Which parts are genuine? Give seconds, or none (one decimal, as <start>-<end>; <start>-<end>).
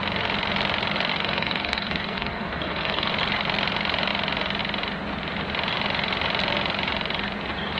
0.0-1.1; 3.1-7.8